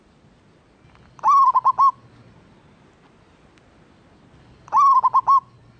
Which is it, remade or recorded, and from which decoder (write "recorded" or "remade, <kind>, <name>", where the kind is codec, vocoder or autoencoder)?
recorded